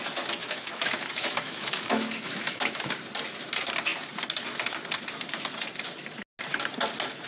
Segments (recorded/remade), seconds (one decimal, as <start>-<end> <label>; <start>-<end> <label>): 0.0-0.4 recorded; 0.4-2.9 remade; 2.9-7.3 recorded

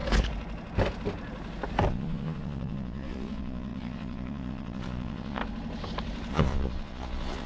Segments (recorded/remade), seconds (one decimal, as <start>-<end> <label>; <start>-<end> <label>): 0.0-1.9 recorded; 1.9-5.4 remade; 5.4-6.3 recorded; 6.3-7.5 remade